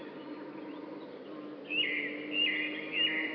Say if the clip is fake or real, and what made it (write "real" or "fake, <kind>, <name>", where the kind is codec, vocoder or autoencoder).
real